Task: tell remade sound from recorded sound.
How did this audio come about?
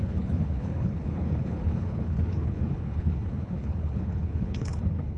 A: remade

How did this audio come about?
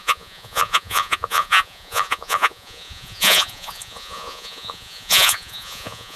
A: remade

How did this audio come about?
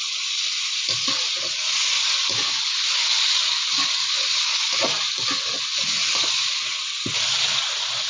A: recorded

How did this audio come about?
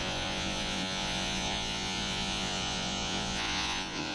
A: remade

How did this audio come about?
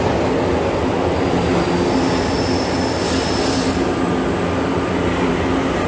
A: recorded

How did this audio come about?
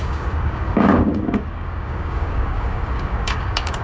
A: remade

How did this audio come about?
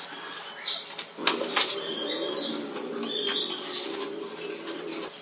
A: recorded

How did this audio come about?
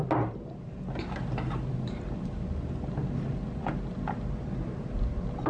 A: recorded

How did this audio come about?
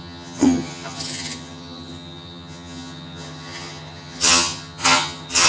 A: remade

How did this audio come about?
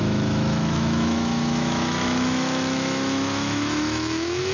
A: remade